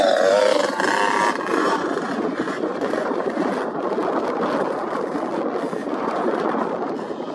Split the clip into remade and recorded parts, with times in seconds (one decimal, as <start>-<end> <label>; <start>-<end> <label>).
0.0-1.5 recorded; 1.5-3.5 remade; 3.5-5.8 recorded; 5.8-6.6 remade; 6.6-7.3 recorded